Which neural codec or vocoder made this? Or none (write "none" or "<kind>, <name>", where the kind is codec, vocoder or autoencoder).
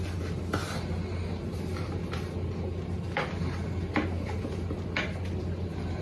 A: none